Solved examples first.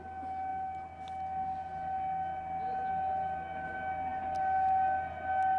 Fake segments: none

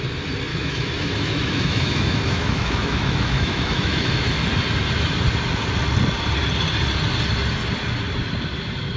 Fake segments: 0.5-4.3 (autoencoder, DAC-VAE)

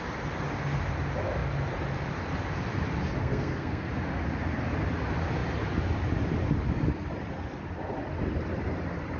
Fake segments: 3.2-3.9 (codec, SNAC)

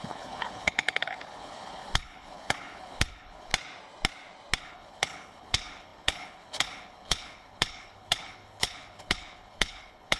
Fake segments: 0.0-3.5 (codec, HILCodec); 4.6-10.2